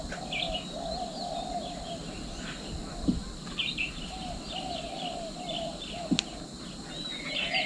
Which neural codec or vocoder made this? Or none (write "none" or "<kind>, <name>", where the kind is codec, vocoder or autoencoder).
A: none